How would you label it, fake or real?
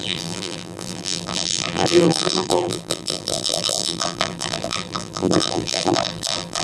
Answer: fake